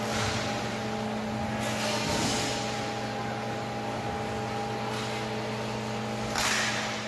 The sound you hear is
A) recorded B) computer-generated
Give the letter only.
A